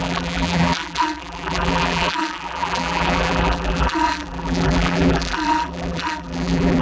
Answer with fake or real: fake